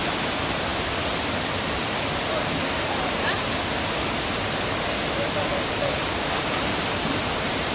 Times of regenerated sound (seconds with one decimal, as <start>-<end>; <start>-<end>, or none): 0.0-0.7; 2.7-3.6; 5.7-7.7